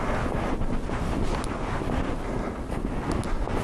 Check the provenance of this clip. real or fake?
real